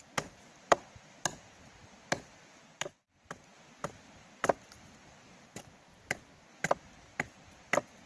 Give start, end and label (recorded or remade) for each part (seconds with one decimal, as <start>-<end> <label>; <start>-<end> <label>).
0.0-8.1 recorded